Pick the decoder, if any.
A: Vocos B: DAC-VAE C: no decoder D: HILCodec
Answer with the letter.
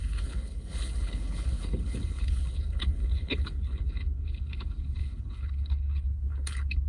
D